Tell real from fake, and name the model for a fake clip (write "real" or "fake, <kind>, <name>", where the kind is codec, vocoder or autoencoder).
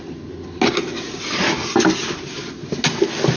real